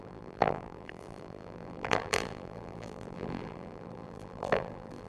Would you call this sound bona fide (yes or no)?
no